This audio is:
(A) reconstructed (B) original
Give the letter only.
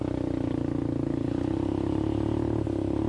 B